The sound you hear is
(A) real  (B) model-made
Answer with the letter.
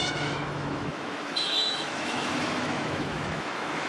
B